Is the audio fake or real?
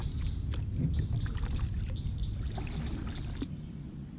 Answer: real